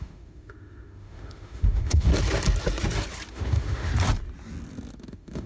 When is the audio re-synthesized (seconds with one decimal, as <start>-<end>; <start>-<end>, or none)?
0.0-2.1; 3.3-3.9; 5.0-5.5